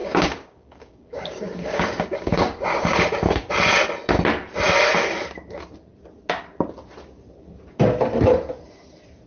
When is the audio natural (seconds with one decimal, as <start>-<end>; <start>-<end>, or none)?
3.5-9.3